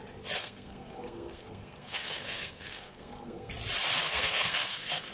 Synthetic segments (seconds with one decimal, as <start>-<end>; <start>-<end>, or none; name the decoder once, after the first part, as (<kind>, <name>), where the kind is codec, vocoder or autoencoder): 0.4-3.5 (codec, SNAC); 4.0-5.1